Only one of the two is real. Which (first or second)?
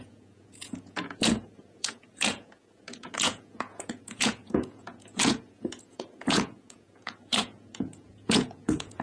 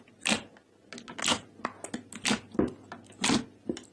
second